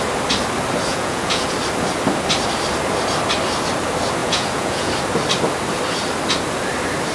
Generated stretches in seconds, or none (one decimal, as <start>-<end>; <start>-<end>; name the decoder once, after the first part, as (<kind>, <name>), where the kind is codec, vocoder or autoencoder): 0.9-1.5 (vocoder, Vocos); 4.2-4.9